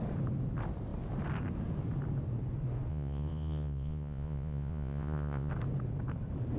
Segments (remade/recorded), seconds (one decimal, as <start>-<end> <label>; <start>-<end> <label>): 0.0-2.9 recorded; 2.9-5.5 remade; 5.5-6.6 recorded